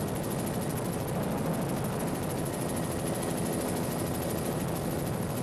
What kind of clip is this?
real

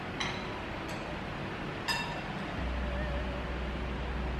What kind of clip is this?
real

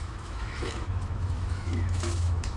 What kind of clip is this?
fake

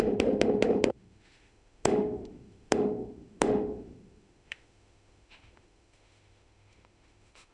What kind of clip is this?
fake